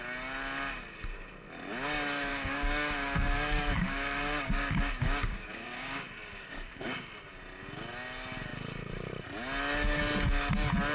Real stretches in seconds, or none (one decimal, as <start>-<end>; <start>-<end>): 0.0-2.3; 7.2-10.9